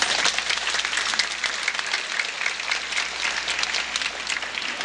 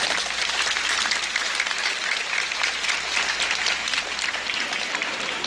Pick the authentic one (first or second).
first